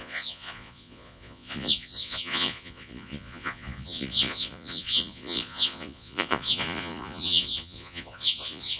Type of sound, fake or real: fake